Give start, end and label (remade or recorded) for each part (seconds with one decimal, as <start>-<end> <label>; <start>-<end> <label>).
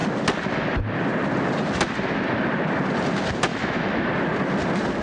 0.0-3.5 recorded; 3.5-4.1 remade; 4.1-5.0 recorded